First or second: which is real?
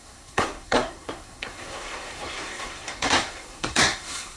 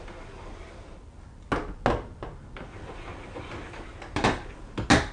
second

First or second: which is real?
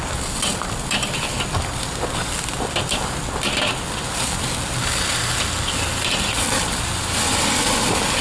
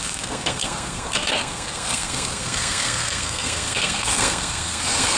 first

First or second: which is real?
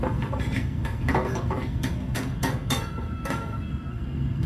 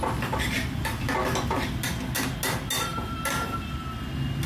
second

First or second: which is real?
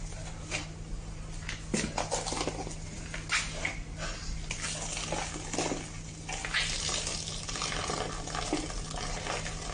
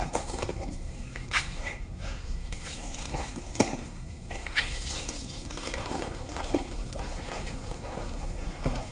first